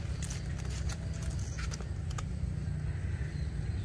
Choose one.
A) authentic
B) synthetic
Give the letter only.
A